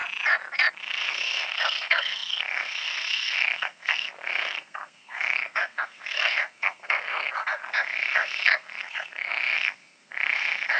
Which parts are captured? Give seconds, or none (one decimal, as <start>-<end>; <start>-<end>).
0.0-0.7